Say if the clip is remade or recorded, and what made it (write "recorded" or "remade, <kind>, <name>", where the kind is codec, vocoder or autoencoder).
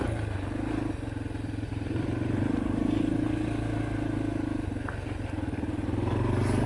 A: recorded